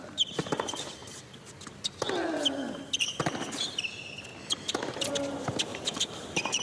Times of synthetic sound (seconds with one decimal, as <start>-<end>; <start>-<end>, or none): 5.7-6.6